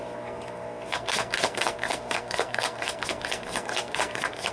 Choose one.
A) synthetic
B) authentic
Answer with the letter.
A